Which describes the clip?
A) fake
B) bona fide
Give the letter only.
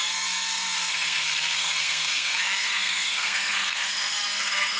A